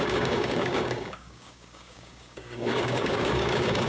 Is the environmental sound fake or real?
fake